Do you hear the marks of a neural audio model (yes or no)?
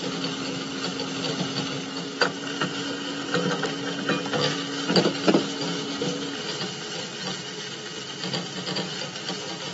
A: no